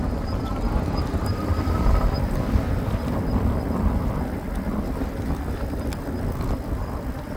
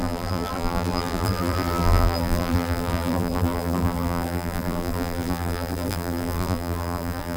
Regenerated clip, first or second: second